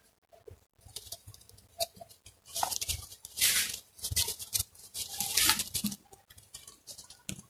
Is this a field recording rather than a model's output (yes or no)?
yes